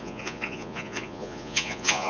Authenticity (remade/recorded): remade